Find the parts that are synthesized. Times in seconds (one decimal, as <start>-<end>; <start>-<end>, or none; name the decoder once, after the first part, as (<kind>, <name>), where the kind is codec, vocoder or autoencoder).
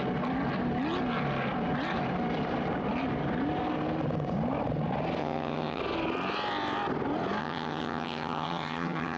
5.2-5.8 (vocoder, HiFi-GAN); 7.4-9.2